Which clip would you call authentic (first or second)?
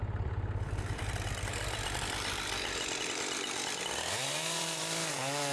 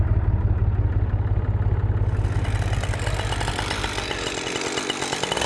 second